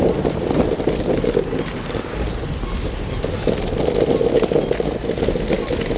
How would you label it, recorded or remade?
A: recorded